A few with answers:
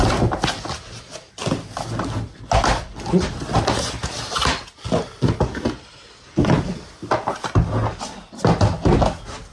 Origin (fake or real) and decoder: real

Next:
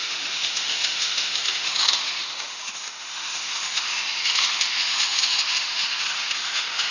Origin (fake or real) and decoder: fake, autoencoder, DAC-VAE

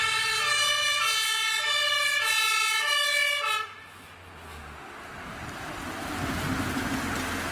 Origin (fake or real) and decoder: real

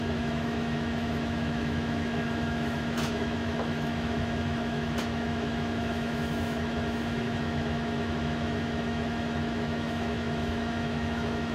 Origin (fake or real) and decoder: fake, autoencoder, DAC-VAE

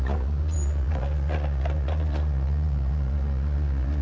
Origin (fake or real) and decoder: fake, vocoder, Vocos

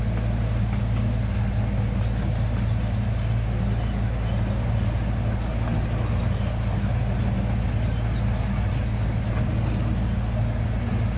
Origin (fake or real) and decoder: real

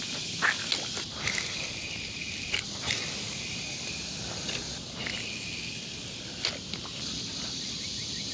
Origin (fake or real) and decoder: real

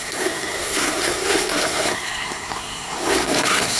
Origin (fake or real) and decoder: fake, codec, SNAC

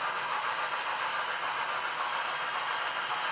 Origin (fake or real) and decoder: real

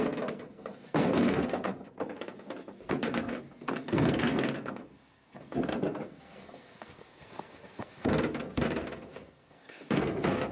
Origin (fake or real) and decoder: fake, codec, SNAC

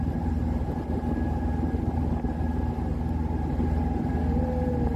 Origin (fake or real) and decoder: real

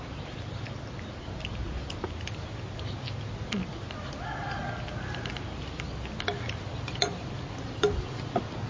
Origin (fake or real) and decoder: real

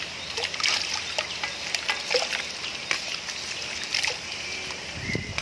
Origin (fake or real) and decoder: fake, vocoder, BigVGAN v2